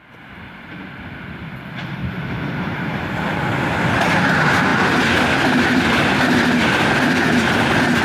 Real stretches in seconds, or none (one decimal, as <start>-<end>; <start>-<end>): 0.0-2.0; 3.0-8.0